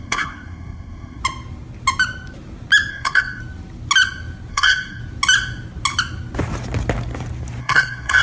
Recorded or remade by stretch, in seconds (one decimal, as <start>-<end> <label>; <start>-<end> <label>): 0.0-1.2 remade; 1.2-2.9 recorded; 2.9-3.4 remade; 3.4-4.5 recorded; 4.5-5.0 remade; 5.0-7.6 recorded; 7.6-8.2 remade